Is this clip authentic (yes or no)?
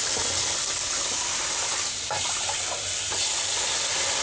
yes